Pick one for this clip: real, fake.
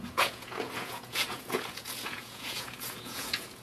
fake